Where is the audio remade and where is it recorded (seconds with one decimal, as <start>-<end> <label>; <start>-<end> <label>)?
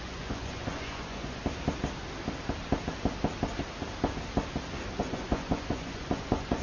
0.0-1.4 remade; 1.4-5.0 recorded; 5.0-6.6 remade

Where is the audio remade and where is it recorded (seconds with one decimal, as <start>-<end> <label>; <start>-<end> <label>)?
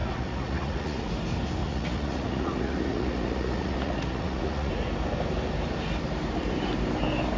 0.0-1.1 remade; 1.1-1.6 recorded; 1.6-4.7 remade; 4.7-7.4 recorded